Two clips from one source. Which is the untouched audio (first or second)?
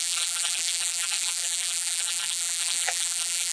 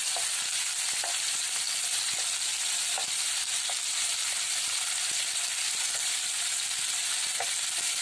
second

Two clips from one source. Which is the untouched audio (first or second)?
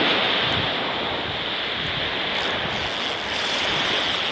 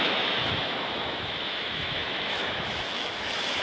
first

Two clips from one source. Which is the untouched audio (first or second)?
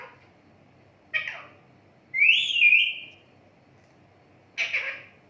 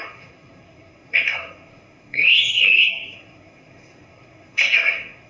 first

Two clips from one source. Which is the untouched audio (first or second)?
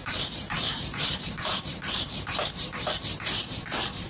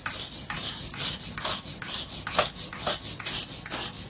second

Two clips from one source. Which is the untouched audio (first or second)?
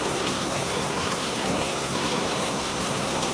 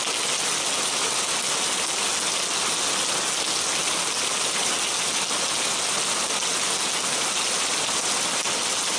second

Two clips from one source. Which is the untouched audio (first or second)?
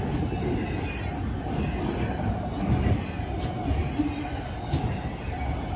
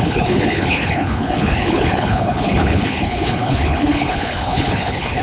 first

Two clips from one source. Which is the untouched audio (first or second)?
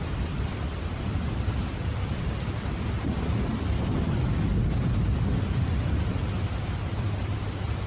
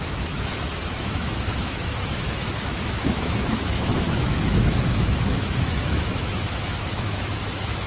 first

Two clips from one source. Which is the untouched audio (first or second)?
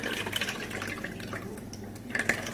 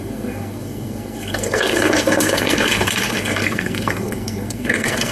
first